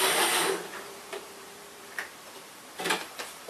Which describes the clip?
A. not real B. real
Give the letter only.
A